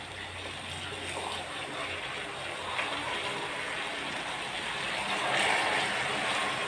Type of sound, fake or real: real